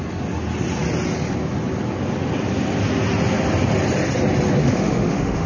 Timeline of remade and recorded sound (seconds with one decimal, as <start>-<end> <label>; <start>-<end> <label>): 0.0-4.6 recorded; 4.6-5.5 remade